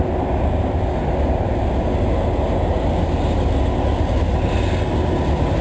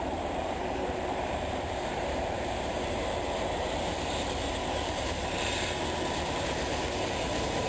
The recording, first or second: first